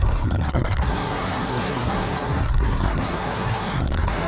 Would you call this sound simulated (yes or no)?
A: yes